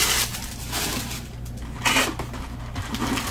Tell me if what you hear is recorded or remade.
recorded